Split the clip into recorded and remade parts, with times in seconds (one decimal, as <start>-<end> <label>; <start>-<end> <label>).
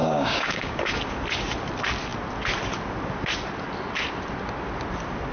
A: 0.0-1.0 remade; 1.0-5.3 recorded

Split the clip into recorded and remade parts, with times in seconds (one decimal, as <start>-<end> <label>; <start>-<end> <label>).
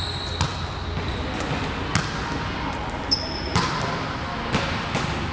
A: 0.0-5.3 recorded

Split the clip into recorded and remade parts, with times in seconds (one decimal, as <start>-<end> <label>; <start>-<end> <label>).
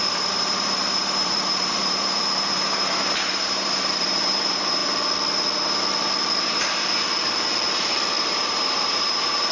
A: 0.0-4.8 remade; 4.8-8.2 recorded; 8.2-9.5 remade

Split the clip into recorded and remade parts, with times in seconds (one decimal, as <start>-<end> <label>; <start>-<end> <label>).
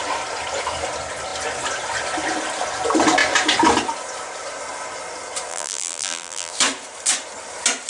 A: 0.0-5.5 recorded; 5.5-6.5 remade; 6.5-7.9 recorded